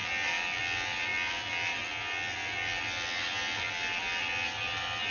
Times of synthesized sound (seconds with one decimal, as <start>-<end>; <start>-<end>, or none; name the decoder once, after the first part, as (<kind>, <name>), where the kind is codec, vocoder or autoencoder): none